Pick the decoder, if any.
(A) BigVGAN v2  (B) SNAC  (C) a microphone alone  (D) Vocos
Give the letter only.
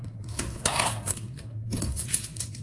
B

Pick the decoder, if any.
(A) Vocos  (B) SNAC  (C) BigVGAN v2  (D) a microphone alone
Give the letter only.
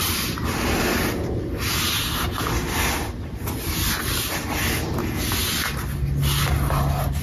D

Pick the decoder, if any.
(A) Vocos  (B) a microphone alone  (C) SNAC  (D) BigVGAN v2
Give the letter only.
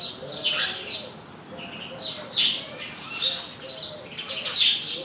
B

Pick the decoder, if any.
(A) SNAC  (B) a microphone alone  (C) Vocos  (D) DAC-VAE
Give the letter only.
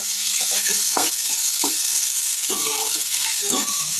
A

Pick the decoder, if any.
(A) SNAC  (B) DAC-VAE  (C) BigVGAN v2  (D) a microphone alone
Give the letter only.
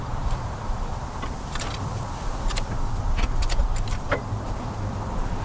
D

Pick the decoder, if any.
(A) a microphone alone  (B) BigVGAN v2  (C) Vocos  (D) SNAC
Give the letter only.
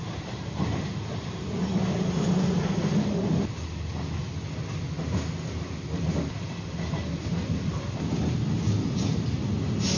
A